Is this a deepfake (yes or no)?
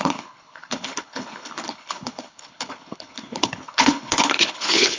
yes